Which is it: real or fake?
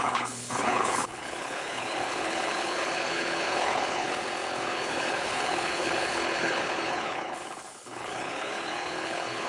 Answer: fake